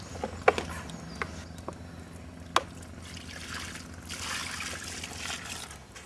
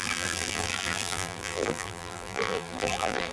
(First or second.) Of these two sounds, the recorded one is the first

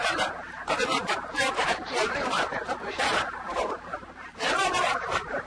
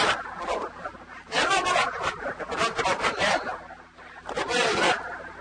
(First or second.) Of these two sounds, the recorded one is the second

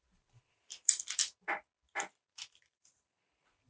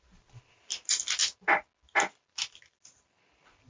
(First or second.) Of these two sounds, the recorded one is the second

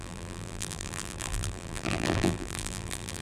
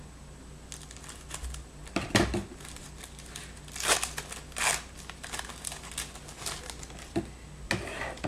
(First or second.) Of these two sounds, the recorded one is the second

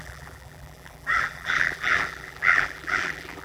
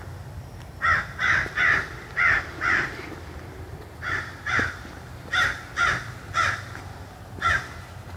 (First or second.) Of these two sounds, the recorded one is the second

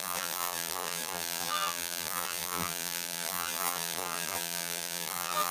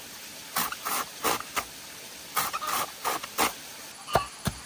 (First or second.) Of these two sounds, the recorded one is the second